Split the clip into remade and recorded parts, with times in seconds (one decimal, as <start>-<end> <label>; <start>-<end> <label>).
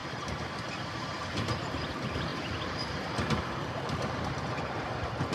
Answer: 0.0-0.6 remade; 0.6-5.3 recorded